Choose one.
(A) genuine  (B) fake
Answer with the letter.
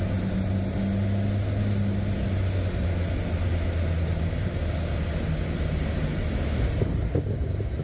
A